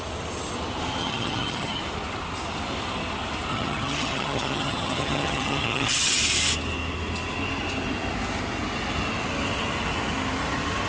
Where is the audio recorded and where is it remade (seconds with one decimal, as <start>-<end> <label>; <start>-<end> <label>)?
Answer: 0.0-1.0 recorded; 1.0-1.8 remade; 1.8-3.5 recorded; 3.5-6.2 remade; 6.2-10.9 recorded